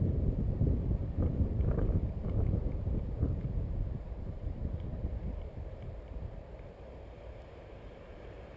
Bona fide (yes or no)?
no